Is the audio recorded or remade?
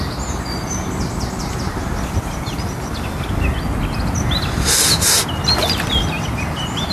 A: recorded